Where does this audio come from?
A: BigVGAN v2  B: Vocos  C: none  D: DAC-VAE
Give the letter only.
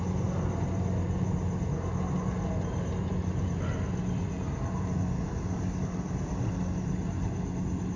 C